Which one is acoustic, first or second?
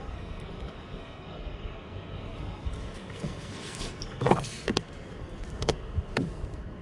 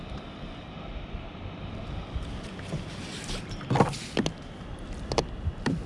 second